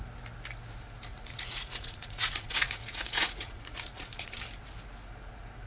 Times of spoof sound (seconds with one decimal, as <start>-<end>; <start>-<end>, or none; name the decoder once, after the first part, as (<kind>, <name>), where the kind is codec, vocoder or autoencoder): 1.1-4.4 (vocoder, Vocos)

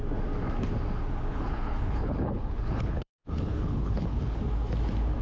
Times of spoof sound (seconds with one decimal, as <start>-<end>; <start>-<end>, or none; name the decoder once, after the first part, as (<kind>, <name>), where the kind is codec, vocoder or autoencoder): 1.3-4.4 (codec, HILCodec)

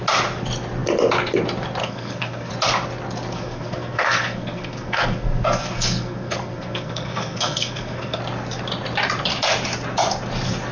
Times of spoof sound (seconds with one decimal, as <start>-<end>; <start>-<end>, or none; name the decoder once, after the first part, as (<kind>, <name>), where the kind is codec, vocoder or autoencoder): 1.8-2.5 (codec, SNAC); 3.3-8.2

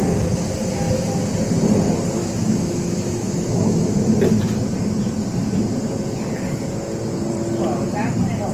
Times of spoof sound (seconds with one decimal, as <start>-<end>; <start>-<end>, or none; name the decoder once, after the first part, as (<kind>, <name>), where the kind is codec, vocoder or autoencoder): 2.2-3.6 (autoencoder, DAC-VAE)

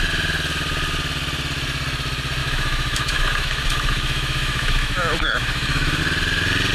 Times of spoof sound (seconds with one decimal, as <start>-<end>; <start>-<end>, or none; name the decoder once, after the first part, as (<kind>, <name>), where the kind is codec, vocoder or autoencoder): 2.4-6.0 (autoencoder, DAC-VAE)

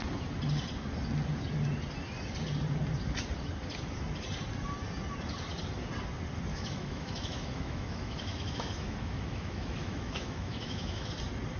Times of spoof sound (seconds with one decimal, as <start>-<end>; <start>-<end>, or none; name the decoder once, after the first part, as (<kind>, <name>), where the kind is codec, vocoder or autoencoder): 6.5-11.1 (autoencoder, DAC-VAE)